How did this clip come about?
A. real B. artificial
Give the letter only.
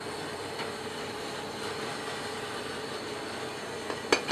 A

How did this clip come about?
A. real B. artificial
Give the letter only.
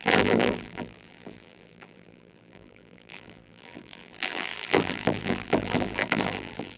B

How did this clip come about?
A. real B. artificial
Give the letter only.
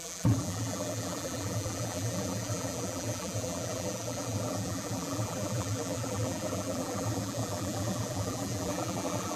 B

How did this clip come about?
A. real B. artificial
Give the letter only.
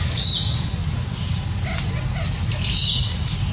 A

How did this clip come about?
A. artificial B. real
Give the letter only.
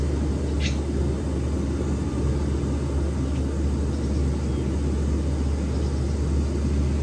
B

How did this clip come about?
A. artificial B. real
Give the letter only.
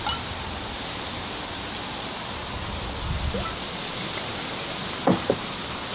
B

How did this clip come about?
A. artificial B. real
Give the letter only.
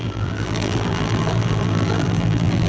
A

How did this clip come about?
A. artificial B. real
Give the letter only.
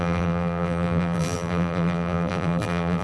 A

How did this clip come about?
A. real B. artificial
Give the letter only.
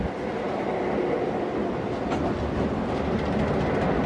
A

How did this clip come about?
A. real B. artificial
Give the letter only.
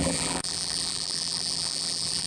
B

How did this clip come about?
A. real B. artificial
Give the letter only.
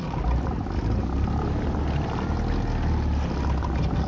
A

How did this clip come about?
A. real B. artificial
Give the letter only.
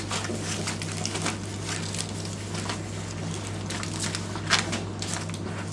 A